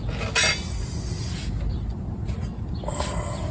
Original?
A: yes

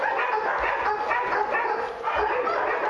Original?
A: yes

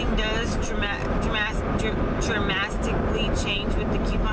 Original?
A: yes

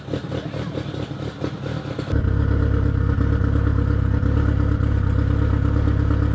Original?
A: yes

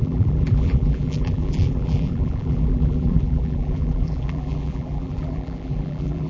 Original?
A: no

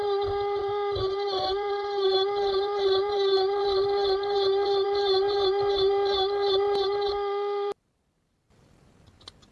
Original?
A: no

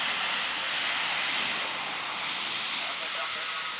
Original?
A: yes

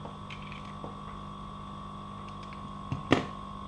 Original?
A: yes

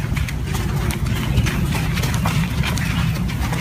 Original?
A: yes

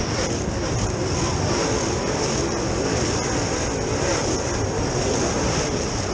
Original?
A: no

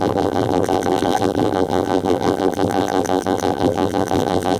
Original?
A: no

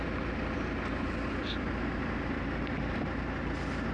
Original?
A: yes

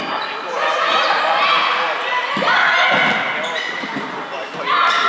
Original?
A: yes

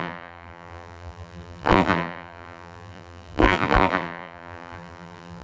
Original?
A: no